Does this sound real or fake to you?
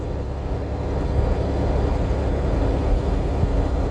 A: real